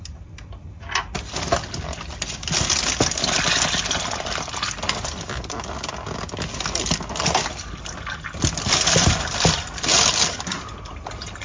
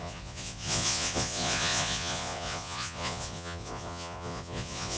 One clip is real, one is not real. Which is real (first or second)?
first